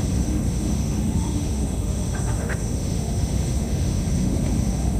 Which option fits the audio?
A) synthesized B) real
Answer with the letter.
A